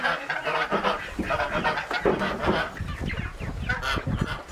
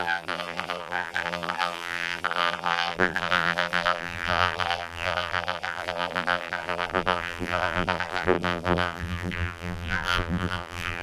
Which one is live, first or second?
first